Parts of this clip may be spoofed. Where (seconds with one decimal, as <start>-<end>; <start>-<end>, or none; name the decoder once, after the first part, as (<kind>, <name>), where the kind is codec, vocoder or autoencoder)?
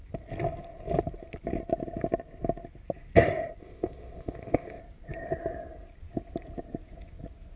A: 3.6-4.8 (codec, ZipCodec)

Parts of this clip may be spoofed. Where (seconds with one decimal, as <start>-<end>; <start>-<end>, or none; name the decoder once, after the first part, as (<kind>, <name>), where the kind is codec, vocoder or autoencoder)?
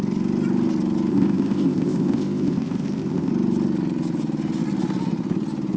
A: 1.1-3.3 (codec, ZipCodec)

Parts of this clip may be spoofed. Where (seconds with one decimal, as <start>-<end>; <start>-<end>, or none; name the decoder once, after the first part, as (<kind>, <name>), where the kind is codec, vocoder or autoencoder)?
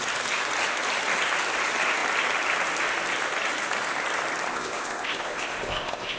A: 4.5-6.2 (codec, ZipCodec)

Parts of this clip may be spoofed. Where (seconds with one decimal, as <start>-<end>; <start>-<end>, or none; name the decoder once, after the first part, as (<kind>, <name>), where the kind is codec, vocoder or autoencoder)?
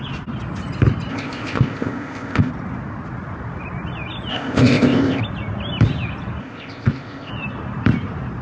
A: 1.1-2.5 (codec, ZipCodec); 4.3-5.2; 6.4-7.3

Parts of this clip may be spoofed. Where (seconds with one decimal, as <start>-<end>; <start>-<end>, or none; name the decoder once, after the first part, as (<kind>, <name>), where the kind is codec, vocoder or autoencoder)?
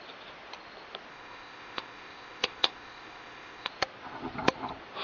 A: 1.1-3.7 (codec, ZipCodec)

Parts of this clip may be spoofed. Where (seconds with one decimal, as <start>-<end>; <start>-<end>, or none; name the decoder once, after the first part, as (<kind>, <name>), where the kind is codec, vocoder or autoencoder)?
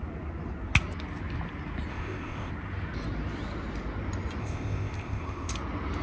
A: 1.9-2.5 (codec, ZipCodec); 4.4-5.5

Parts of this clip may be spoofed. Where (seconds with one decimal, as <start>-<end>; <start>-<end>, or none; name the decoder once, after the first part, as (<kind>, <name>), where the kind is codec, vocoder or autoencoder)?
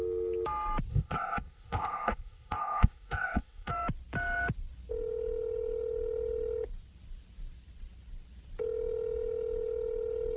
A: 0.9-3.7 (codec, ZipCodec)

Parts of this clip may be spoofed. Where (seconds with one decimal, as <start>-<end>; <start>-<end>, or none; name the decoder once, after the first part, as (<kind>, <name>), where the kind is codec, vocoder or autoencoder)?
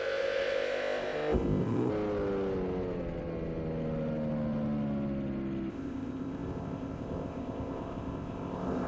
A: 0.0-1.9 (codec, ZipCodec); 5.7-8.9